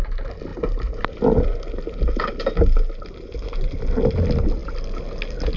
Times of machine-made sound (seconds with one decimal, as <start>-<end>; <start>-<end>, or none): 0.5-1.5